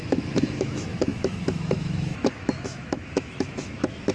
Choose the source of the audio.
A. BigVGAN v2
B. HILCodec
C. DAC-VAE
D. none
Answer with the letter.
C